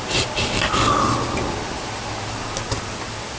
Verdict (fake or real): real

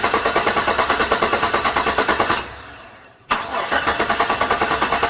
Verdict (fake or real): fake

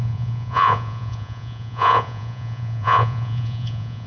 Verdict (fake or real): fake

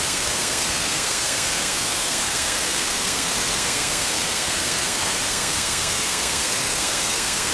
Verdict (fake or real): fake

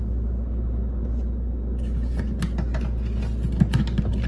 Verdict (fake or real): real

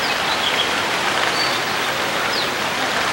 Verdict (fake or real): real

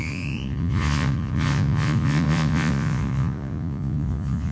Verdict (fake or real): fake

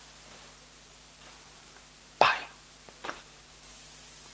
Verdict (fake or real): real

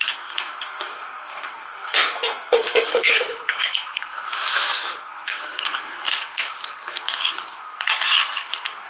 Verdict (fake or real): fake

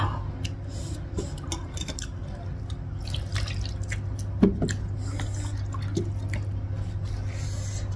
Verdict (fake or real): real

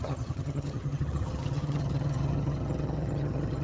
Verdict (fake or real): fake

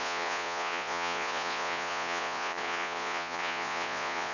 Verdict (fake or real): fake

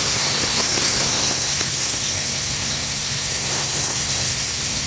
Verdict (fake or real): fake